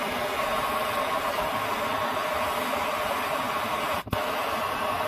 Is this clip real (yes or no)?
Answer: no